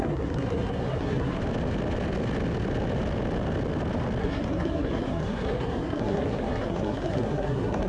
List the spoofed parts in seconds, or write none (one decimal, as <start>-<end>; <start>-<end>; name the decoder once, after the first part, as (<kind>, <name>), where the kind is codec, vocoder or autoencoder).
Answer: 0.0-1.4 (codec, SNAC); 4.2-7.9